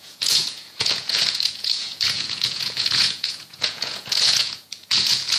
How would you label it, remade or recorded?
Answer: remade